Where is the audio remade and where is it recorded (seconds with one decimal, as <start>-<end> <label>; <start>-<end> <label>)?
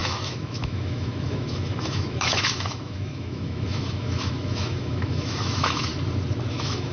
0.0-5.9 remade; 5.9-6.5 recorded; 6.5-6.9 remade